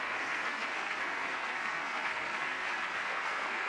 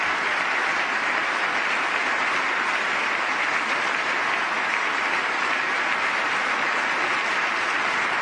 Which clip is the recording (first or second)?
second